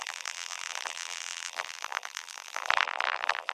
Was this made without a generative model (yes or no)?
no